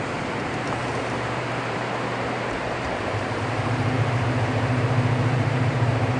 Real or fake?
fake